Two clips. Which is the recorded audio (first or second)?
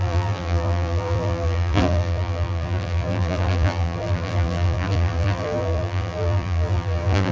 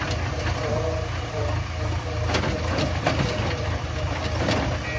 second